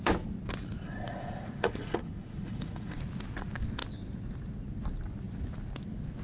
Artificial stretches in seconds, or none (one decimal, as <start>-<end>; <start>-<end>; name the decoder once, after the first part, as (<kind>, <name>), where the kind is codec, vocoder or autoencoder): 0.8-3.0 (vocoder, Vocos)